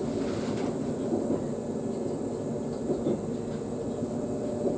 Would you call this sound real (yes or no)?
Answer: yes